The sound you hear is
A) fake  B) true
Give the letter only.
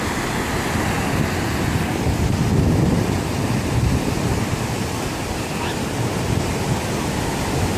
B